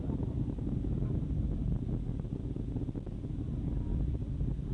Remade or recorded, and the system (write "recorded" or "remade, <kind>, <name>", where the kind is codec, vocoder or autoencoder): recorded